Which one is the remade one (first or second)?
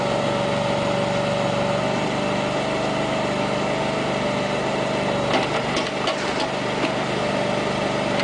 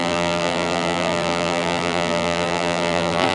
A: second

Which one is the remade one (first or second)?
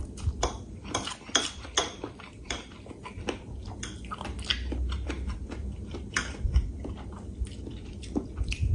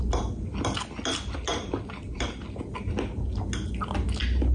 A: first